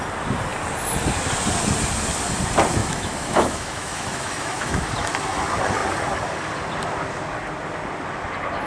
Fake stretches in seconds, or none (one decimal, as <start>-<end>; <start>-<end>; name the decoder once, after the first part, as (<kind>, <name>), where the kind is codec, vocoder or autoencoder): 2.8-4.9 (autoencoder, DAC-VAE)